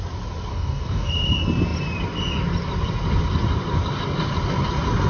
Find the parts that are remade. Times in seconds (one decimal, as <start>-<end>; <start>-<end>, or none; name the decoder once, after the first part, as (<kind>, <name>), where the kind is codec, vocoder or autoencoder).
0.5-1.1 (codec, DAC)